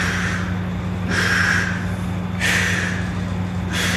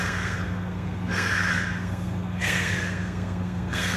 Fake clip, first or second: second